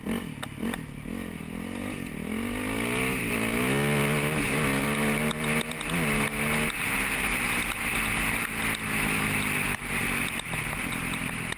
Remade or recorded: recorded